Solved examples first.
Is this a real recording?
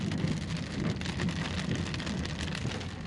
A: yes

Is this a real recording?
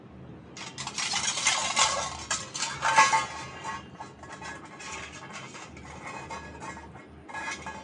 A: yes